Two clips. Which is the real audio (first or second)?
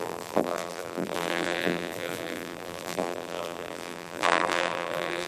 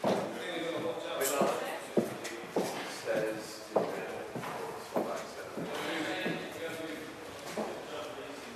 second